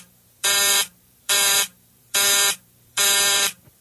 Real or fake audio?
fake